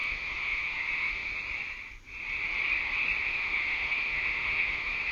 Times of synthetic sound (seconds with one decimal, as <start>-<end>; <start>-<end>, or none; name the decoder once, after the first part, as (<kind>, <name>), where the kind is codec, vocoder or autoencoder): 0.0-1.3 (autoencoder, DAC-VAE); 3.2-5.1